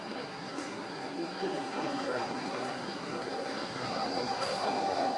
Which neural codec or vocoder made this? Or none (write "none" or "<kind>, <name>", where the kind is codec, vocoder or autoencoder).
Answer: codec, SNAC